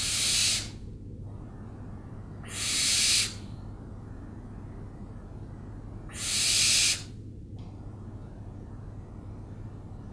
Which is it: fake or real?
real